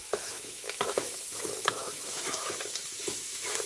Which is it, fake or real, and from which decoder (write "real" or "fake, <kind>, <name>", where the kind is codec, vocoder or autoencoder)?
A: fake, autoencoder, DAC-VAE